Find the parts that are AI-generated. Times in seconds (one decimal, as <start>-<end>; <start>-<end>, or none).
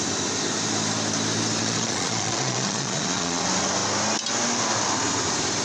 1.6-3.4